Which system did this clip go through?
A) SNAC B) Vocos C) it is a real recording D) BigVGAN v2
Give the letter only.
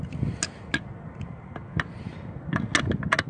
C